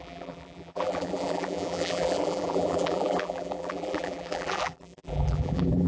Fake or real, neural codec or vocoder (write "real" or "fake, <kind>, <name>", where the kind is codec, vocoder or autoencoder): fake, vocoder, BigVGAN v2